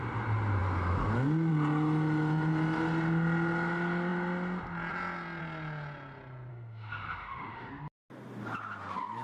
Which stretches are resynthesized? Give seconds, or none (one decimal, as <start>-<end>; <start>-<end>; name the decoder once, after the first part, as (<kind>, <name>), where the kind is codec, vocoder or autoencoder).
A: 6.5-7.7 (autoencoder, DAC-VAE)

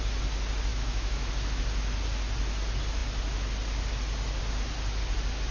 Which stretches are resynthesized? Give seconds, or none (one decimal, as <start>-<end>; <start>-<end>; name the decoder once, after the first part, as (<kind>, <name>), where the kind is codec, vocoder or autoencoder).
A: 0.7-1.3 (autoencoder, DAC-VAE)

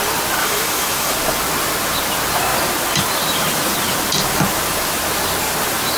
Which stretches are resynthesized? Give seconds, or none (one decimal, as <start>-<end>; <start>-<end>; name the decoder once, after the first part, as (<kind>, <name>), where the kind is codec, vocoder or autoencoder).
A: 0.4-1.1 (autoencoder, DAC-VAE)

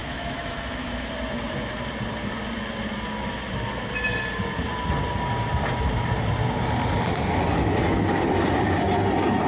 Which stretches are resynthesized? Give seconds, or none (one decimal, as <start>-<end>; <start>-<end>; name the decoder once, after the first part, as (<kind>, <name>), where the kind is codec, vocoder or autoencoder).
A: 0.0-1.1 (autoencoder, DAC-VAE)

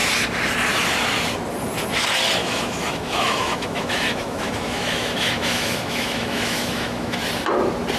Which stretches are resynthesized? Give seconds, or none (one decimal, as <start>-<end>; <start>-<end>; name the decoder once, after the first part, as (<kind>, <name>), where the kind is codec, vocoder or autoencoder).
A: 2.4-7.2 (autoencoder, DAC-VAE)

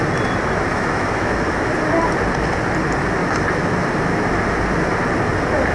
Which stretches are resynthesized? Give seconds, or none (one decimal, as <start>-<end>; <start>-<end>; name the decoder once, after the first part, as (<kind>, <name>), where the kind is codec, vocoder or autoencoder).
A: 0.7-1.7 (autoencoder, DAC-VAE)

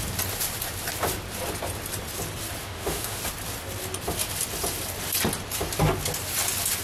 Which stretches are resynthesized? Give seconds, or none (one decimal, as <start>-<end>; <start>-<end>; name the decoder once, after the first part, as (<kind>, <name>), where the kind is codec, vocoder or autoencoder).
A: 2.6-3.2 (autoencoder, DAC-VAE)